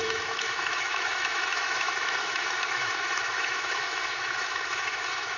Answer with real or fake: fake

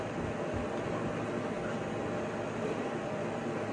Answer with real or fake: real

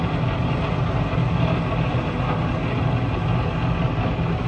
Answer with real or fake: real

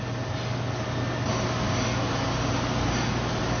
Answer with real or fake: real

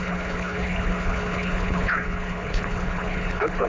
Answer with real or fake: fake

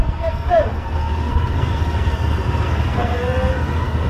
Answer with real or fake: fake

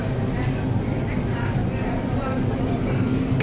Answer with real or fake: real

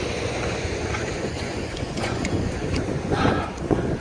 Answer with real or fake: fake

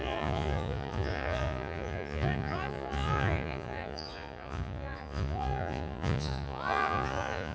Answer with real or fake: fake